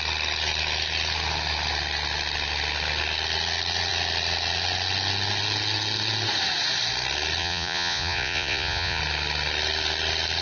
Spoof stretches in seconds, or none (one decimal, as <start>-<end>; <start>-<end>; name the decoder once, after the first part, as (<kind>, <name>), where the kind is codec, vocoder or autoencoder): 7.4-9.0 (vocoder, Vocos)